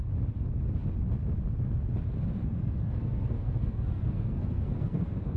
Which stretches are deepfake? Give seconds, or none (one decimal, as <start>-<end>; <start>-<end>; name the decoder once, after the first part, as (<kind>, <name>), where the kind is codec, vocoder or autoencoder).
2.4-5.4 (codec, SNAC)